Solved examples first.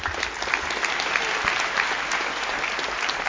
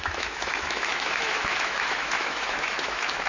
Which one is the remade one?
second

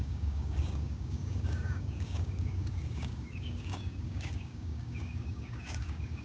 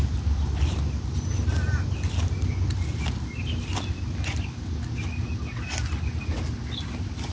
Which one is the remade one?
first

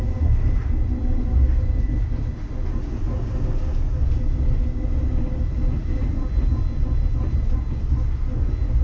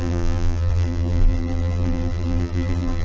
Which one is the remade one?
second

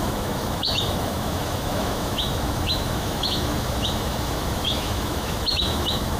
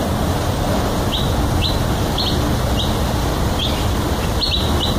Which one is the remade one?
first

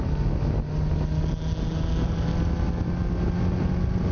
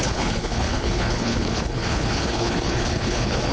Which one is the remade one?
second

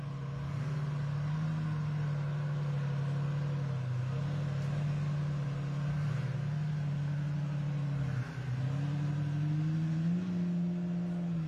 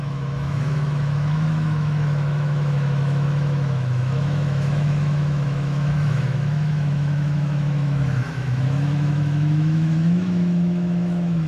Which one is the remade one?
second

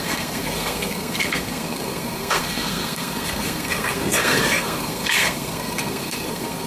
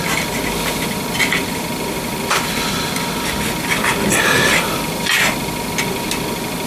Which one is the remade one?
first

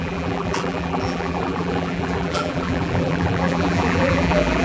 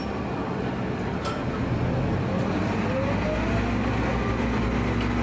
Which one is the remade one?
first